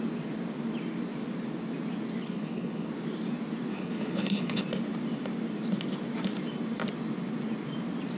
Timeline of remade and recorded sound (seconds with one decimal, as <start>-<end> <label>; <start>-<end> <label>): 0.0-2.2 recorded; 2.2-2.9 remade; 2.9-3.7 recorded; 3.7-4.6 remade; 4.6-8.2 recorded